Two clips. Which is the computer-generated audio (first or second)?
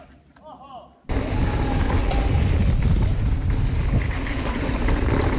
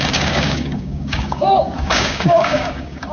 second